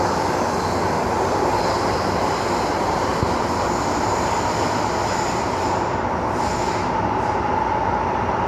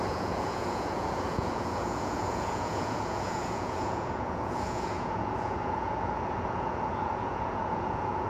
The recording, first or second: first